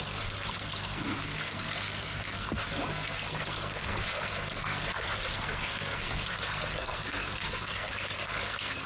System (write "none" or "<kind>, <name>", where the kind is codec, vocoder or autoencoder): codec, SNAC